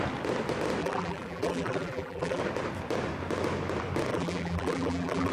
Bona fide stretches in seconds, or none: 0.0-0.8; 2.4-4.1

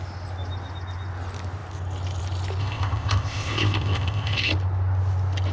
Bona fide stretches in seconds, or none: 0.0-2.6; 4.5-5.5

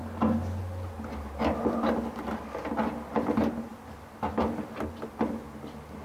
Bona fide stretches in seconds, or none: 0.0-6.0

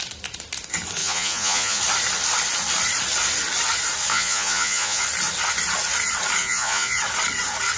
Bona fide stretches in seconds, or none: 0.0-1.0; 1.8-4.1; 5.0-6.4; 7.0-7.8

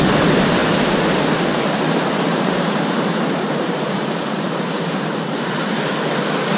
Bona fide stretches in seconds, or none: 0.0-0.6; 1.2-2.3; 5.9-6.6

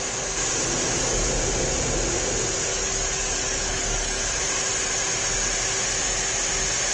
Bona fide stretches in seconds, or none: 0.0-2.7; 4.2-6.9

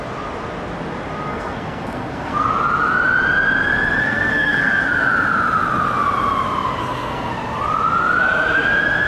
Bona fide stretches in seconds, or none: 0.0-1.3; 2.5-4.0; 4.9-6.8; 7.3-9.1

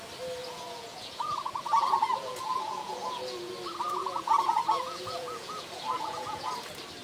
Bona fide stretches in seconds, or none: 0.0-0.4; 3.5-4.0; 6.6-7.0